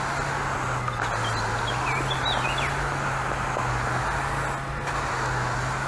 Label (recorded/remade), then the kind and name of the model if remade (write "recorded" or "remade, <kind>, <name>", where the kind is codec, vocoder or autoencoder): recorded